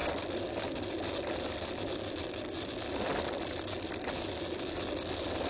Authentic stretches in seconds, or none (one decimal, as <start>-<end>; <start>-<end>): 0.0-5.5